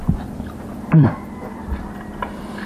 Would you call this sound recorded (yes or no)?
no